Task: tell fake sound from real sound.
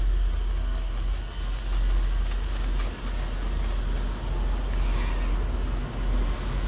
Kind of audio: real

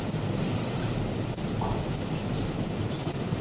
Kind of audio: real